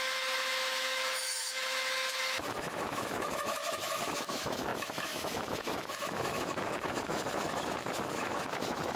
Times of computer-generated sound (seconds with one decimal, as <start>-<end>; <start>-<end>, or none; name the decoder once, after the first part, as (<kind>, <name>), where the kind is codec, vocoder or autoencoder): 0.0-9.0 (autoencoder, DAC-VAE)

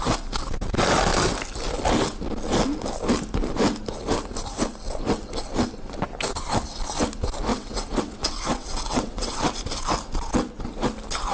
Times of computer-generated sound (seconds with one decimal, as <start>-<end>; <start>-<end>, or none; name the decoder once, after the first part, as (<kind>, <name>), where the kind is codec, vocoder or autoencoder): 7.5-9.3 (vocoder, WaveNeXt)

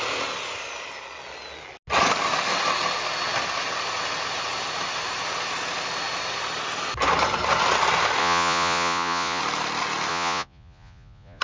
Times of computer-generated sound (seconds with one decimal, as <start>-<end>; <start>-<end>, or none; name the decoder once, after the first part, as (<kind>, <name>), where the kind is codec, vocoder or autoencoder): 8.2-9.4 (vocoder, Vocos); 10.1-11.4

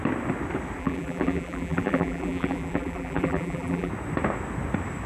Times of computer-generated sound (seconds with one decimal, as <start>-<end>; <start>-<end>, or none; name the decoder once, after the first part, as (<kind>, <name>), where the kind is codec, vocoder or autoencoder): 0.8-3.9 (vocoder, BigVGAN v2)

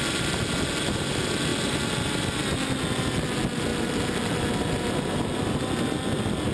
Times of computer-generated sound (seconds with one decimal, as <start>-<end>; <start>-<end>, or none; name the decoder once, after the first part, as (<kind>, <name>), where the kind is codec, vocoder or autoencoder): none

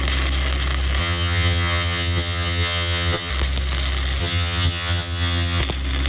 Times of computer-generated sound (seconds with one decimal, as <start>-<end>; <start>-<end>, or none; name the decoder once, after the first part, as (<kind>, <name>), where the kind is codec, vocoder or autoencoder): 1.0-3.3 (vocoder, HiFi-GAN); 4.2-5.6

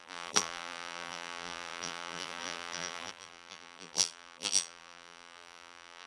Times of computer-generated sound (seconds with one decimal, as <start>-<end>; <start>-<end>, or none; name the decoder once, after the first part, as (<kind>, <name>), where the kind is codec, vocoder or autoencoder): 0.0-6.1 (vocoder, BigVGAN v2)

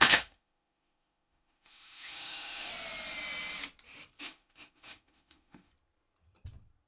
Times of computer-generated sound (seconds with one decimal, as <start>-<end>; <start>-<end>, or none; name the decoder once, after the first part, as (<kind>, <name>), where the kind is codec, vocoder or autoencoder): 0.0-2.7 (autoencoder, DAC-VAE); 4.2-5.7